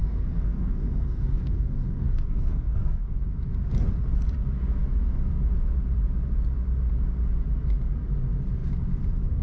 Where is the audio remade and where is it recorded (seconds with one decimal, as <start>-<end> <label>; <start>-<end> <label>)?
0.0-3.2 remade; 3.2-9.4 recorded